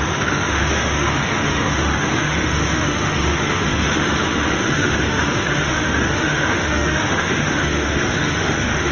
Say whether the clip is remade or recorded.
remade